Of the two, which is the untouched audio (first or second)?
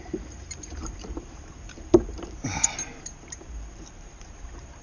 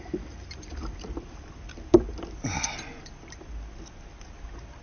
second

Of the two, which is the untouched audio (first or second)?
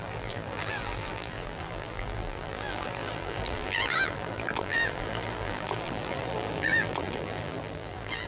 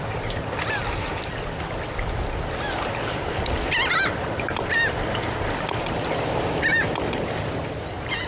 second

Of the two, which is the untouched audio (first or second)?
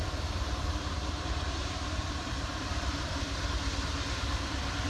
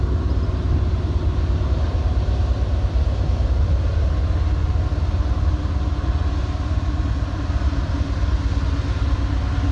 second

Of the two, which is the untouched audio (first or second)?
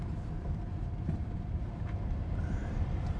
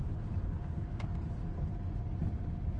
second